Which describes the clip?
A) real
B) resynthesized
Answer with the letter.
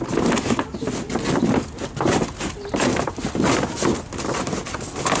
A